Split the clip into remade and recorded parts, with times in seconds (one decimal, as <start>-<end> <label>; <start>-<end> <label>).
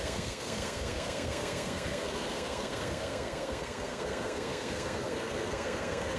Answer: 0.0-6.2 remade